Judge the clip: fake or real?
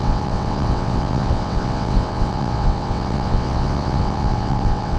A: fake